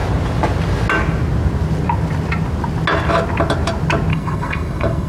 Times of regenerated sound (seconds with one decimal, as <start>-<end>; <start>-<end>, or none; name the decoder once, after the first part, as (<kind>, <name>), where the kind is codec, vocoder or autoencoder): 4.1-5.1 (codec, SNAC)

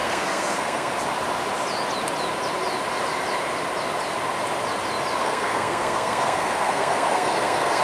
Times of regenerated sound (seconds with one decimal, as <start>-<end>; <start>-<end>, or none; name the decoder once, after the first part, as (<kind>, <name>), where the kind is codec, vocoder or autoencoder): 0.0-0.9 (codec, SNAC); 5.2-7.8

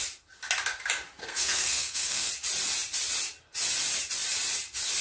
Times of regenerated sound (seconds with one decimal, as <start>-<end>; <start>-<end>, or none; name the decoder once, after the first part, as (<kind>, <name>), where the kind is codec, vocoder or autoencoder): 1.2-2.3 (codec, SNAC)